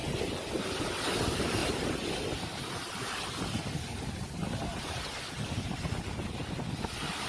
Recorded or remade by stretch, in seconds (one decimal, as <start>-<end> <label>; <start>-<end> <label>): 0.0-7.3 recorded